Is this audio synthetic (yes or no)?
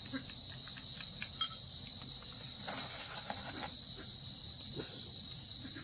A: no